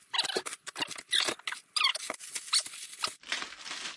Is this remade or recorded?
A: recorded